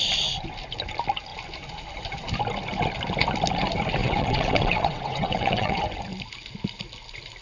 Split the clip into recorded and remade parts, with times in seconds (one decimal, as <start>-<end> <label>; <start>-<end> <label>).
0.0-4.0 recorded; 4.0-5.8 remade; 5.8-7.4 recorded